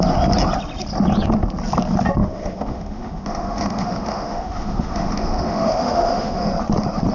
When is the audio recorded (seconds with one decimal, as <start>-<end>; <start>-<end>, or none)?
0.0-2.2; 6.5-7.1